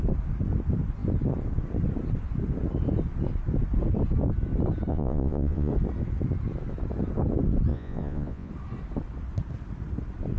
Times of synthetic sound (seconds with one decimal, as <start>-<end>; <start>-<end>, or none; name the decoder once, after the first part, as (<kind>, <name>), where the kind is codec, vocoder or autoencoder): 4.9-5.7 (vocoder, Vocos); 7.7-8.5